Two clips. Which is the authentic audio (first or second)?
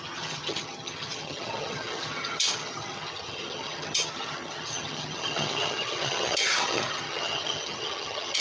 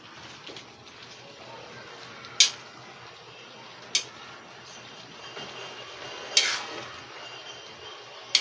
second